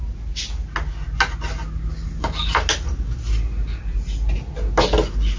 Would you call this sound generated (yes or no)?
no